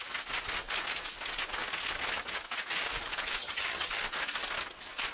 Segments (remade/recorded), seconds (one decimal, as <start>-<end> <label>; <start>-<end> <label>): 0.0-3.4 recorded; 3.4-4.0 remade; 4.0-5.1 recorded